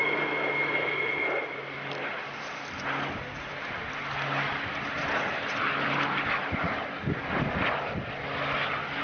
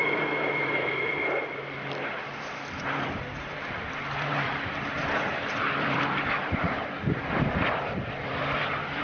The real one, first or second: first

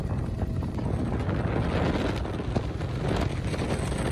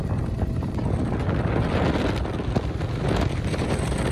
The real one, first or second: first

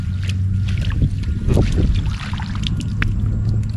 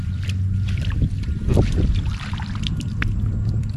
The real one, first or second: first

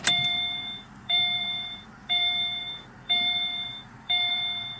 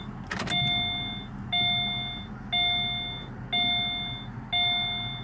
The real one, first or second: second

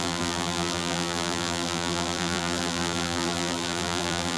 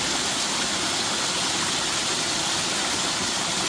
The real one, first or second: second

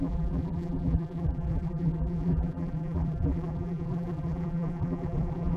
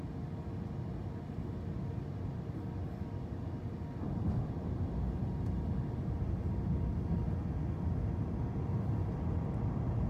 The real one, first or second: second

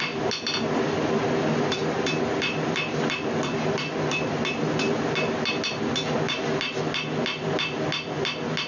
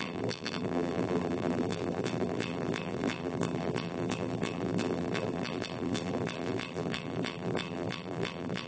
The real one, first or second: first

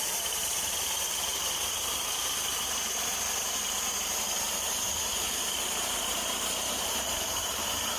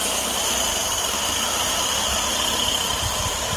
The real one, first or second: second